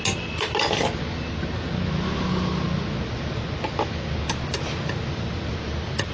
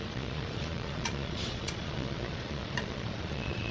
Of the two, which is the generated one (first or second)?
second